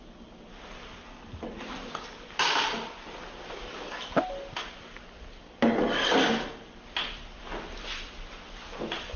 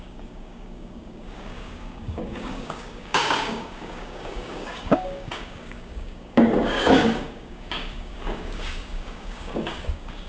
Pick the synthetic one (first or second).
second